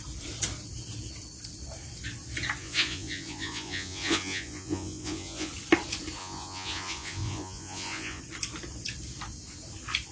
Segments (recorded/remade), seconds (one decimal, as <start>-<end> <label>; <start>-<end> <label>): 0.0-2.6 recorded; 2.6-5.5 remade; 5.5-6.2 recorded; 6.2-8.2 remade; 8.2-10.1 recorded